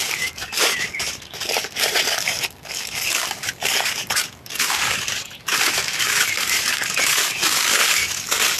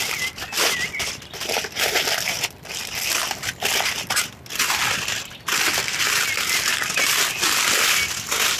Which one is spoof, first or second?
first